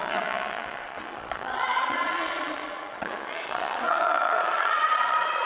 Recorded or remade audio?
remade